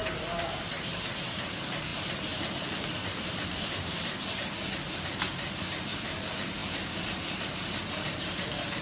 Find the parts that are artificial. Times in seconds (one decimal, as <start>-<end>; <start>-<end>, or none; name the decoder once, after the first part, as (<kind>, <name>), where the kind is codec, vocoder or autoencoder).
0.6-8.8 (vocoder, BigVGAN v2)